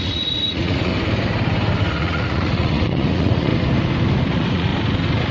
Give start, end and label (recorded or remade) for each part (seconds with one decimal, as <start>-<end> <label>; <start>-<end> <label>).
0.0-0.9 remade; 0.9-1.8 recorded; 1.8-3.5 remade; 3.5-4.3 recorded; 4.3-4.7 remade; 4.7-5.3 recorded